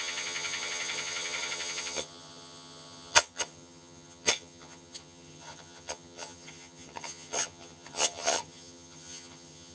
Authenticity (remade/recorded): remade